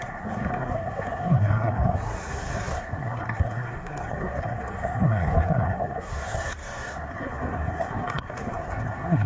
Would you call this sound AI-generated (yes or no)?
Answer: yes